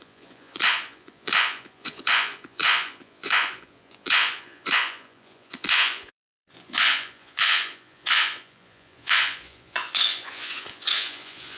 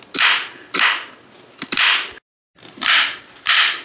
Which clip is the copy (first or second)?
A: first